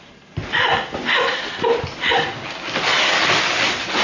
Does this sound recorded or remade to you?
recorded